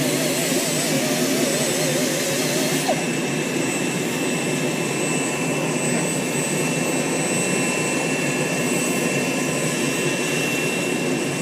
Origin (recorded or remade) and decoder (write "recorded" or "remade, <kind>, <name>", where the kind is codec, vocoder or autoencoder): recorded